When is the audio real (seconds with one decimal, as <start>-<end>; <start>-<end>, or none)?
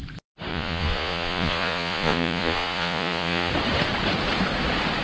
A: 0.0-0.5; 3.5-5.0